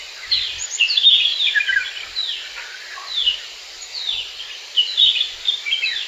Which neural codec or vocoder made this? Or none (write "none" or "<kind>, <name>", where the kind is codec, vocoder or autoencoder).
none